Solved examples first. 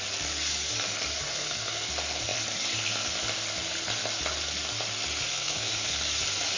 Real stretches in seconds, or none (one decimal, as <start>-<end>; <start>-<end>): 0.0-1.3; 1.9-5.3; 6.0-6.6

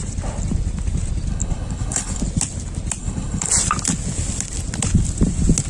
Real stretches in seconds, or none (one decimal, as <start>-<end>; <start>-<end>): 0.0-1.3; 2.2-3.0; 3.5-5.7

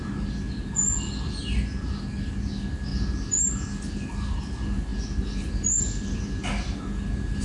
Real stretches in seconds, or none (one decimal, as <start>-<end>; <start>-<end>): 0.0-7.4

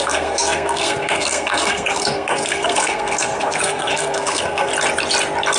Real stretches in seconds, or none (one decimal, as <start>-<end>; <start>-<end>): 4.7-5.6

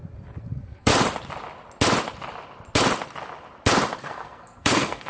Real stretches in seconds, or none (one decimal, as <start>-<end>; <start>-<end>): 0.0-0.5; 0.9-4.0

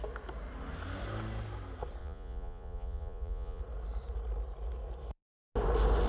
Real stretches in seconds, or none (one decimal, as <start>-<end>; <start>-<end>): 0.0-2.0; 3.6-6.1

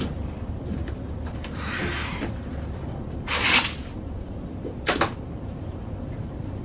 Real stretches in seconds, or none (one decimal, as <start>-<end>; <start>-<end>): 2.1-4.2